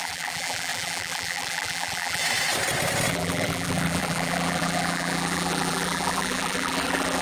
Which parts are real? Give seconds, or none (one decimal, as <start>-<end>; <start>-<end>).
2.2-3.1